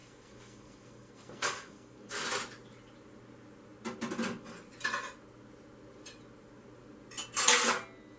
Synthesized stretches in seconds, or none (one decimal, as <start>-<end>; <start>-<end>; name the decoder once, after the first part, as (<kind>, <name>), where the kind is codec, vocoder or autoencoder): 0.0-2.1 (codec, SNAC)